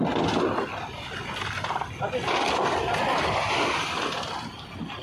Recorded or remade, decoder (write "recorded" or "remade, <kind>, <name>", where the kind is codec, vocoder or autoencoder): recorded